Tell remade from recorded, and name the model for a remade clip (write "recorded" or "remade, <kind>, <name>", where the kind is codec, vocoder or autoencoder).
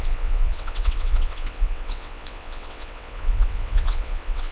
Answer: remade, vocoder, WaveNeXt